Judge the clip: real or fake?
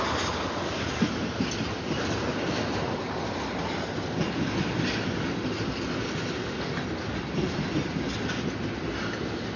real